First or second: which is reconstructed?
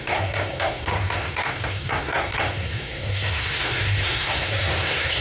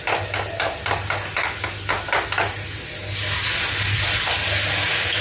first